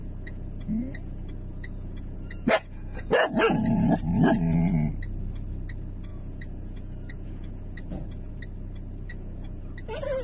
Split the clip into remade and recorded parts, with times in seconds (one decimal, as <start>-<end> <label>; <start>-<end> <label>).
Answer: 0.0-3.6 remade; 3.6-6.1 recorded; 6.1-8.3 remade; 8.3-9.1 recorded; 9.1-10.2 remade